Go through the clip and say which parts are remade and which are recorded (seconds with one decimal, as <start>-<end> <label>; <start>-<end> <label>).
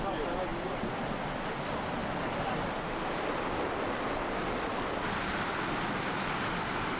0.0-7.0 recorded